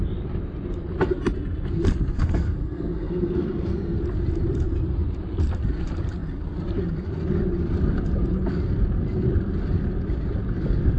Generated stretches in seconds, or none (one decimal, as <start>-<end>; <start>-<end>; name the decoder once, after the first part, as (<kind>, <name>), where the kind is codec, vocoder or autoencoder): 2.1-4.0 (codec, SNAC)